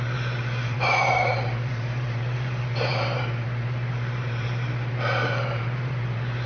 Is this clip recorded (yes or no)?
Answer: no